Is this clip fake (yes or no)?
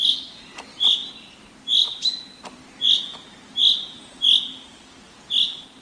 no